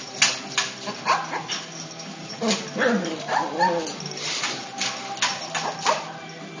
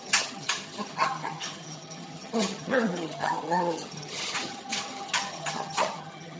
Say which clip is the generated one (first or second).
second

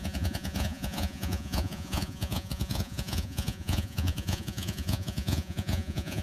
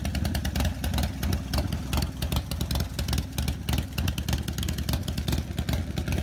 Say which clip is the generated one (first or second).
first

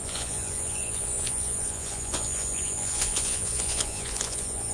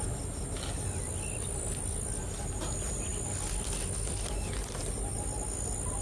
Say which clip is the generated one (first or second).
first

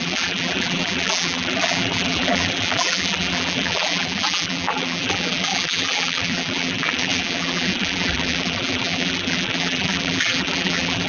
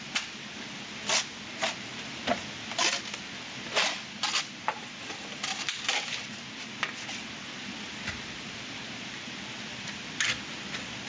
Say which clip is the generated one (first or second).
first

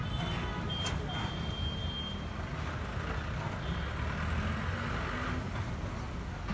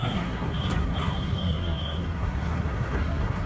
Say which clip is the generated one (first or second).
second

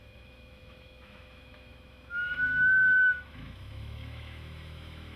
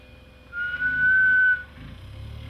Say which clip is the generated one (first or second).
first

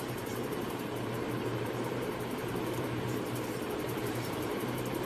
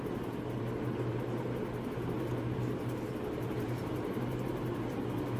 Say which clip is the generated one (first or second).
first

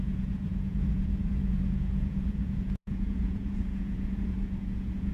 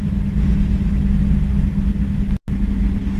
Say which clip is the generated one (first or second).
first